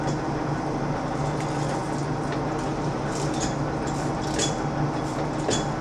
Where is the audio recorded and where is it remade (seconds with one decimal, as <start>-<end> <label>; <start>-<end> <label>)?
0.0-5.8 recorded